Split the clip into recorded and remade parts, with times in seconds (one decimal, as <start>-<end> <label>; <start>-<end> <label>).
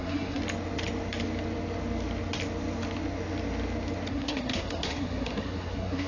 0.0-0.4 remade; 0.4-4.1 recorded; 4.1-6.1 remade